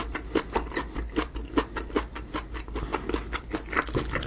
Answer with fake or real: real